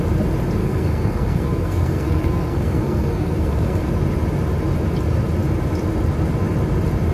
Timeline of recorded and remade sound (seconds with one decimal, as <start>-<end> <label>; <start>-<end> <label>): 0.0-0.6 recorded; 0.6-3.9 remade; 3.9-7.1 recorded